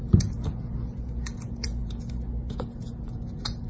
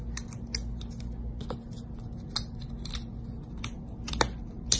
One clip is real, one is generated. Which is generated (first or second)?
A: first